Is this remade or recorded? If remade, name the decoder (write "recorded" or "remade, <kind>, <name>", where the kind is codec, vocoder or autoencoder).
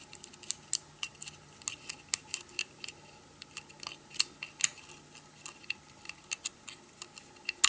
recorded